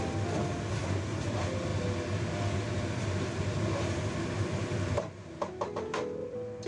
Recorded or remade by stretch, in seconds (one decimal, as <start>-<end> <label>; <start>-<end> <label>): 0.0-0.7 recorded; 0.7-1.2 remade; 1.2-6.7 recorded